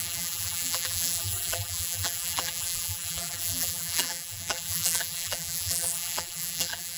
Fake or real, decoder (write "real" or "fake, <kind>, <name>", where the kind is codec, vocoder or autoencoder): fake, vocoder, BigVGAN v2